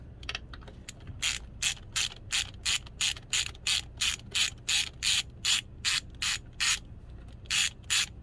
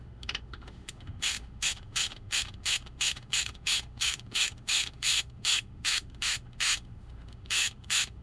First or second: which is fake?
second